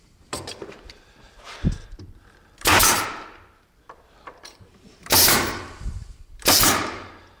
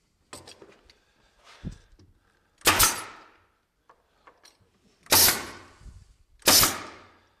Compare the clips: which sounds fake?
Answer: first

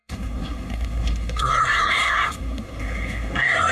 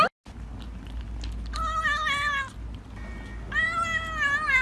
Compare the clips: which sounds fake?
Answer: first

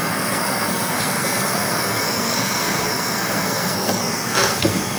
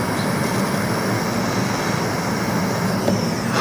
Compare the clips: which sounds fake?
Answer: first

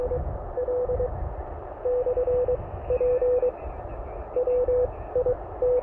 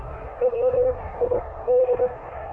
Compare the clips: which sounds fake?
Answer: second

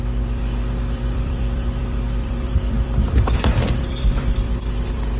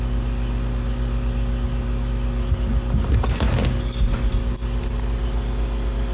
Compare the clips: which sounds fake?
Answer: first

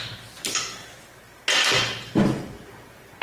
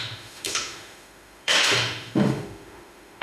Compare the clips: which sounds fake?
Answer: second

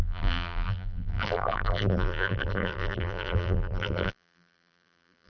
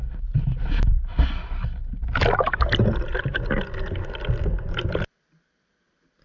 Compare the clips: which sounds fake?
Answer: first